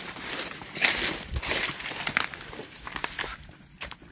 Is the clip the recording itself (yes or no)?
yes